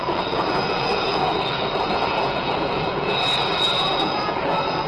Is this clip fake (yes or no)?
yes